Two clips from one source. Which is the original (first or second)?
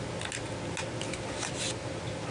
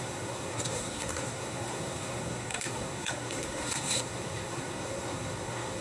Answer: first